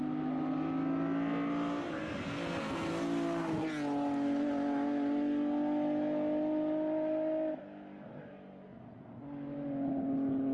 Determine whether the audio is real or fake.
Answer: real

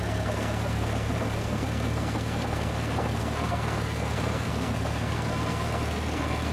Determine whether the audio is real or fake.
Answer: fake